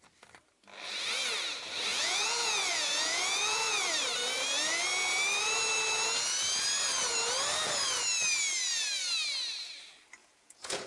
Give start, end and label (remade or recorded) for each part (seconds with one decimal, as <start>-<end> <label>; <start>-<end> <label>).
0.0-1.9 recorded; 1.9-3.9 remade; 3.9-10.2 recorded; 10.2-10.9 remade